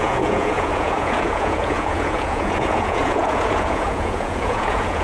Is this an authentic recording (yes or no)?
no